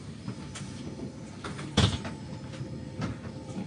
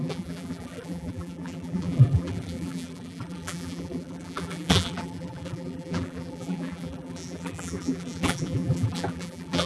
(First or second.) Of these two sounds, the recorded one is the first